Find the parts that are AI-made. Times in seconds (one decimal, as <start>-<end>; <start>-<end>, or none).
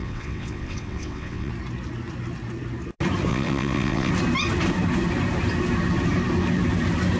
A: 0.0-1.5; 3.3-4.1